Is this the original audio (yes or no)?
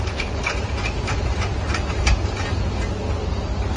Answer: yes